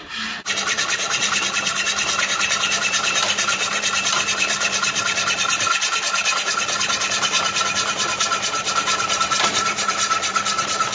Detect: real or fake fake